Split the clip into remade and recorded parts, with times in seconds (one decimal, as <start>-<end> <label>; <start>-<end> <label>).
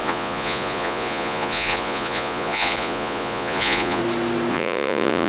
0.0-4.0 remade; 4.0-4.5 recorded; 4.5-5.3 remade